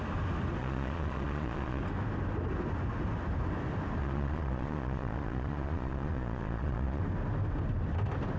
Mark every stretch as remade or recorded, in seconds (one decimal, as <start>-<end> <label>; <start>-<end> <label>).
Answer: 0.0-0.6 recorded; 0.6-1.8 remade; 1.8-4.0 recorded; 4.0-7.0 remade; 7.0-8.4 recorded